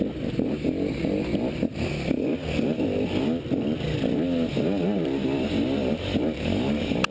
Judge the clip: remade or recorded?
recorded